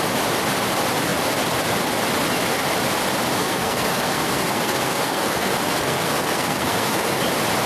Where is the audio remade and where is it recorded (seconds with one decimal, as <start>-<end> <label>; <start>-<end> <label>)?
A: 0.0-3.4 recorded; 3.4-7.2 remade; 7.2-7.7 recorded

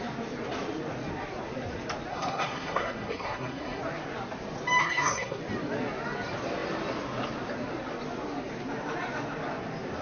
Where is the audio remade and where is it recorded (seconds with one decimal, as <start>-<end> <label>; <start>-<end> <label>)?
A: 0.0-2.1 recorded; 2.1-3.8 remade; 3.8-4.8 recorded; 4.8-5.4 remade; 5.4-10.0 recorded

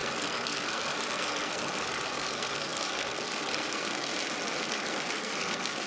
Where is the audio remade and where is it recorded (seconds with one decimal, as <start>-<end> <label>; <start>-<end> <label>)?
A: 0.0-4.1 remade; 4.1-4.7 recorded; 4.7-5.9 remade

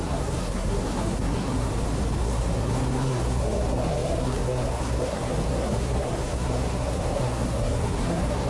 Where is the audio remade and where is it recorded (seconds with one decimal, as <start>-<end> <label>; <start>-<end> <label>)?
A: 0.0-1.7 remade; 1.7-2.2 recorded; 2.2-8.5 remade

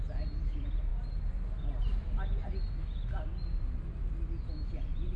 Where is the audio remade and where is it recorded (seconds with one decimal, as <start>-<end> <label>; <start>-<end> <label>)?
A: 0.0-5.2 recorded

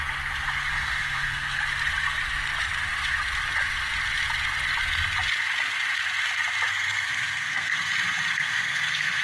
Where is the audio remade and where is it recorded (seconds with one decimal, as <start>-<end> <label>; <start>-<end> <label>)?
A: 0.0-0.7 recorded; 0.7-1.6 remade; 1.6-6.7 recorded; 6.7-7.9 remade; 7.9-8.3 recorded; 8.3-9.2 remade

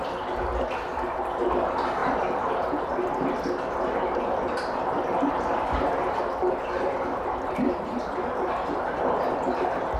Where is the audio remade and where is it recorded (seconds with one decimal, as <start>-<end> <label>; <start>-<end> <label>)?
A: 0.0-10.0 recorded